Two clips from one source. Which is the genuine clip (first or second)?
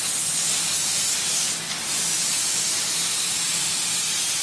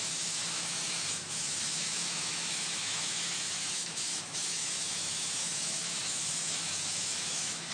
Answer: first